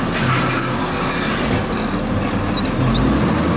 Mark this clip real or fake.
real